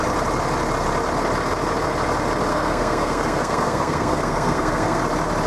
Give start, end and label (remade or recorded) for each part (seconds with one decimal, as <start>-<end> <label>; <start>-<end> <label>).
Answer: 0.0-2.5 recorded; 2.5-5.0 remade; 5.0-5.5 recorded